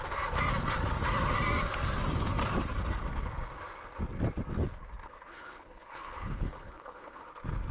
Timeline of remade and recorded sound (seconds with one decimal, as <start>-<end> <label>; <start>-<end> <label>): 0.0-5.0 recorded; 5.0-7.3 remade; 7.3-7.7 recorded